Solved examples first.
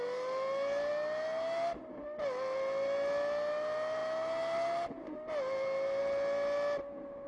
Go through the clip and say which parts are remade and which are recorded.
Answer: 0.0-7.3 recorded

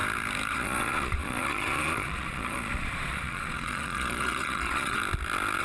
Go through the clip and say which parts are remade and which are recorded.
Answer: 0.0-0.5 recorded; 0.5-5.0 remade; 5.0-5.6 recorded

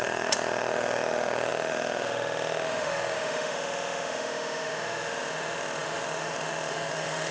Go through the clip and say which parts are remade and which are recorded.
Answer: 0.0-7.3 remade